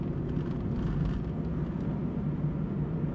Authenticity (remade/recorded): recorded